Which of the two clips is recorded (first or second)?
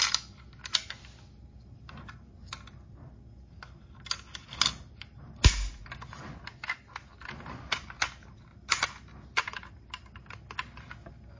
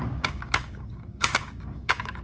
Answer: first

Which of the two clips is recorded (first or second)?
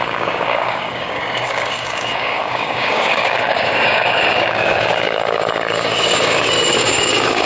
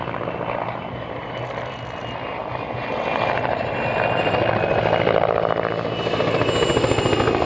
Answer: second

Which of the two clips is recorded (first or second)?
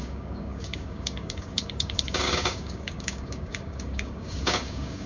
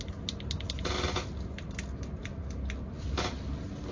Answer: second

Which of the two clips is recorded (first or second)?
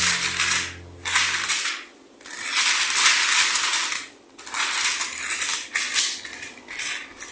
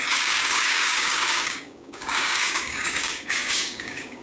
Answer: first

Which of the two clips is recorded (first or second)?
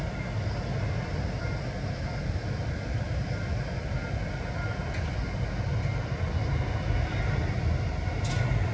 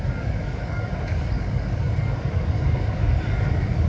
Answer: first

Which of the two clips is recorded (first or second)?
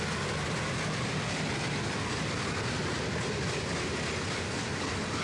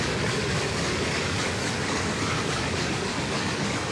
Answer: first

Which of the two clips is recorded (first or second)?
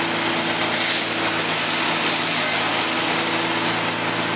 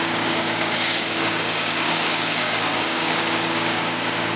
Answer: first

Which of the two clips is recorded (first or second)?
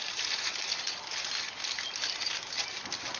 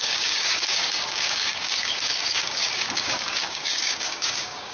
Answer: first